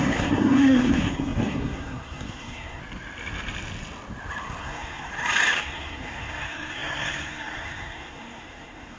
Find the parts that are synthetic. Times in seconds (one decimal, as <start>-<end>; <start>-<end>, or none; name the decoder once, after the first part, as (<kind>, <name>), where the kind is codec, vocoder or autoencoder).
0.0-2.8 (codec, SNAC); 4.6-5.1; 5.6-9.0